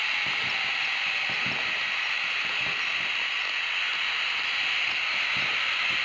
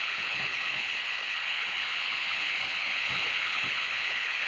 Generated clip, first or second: second